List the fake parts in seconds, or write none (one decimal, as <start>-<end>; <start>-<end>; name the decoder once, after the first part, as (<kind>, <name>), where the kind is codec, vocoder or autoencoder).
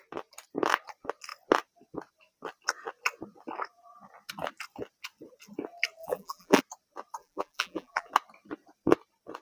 6.0-6.6 (vocoder, BigVGAN v2); 7.2-8.1